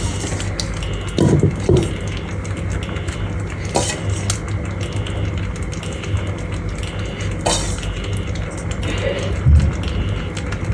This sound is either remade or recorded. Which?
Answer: recorded